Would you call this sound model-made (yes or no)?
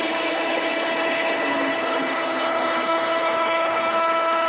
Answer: yes